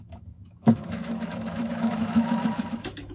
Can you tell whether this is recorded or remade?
remade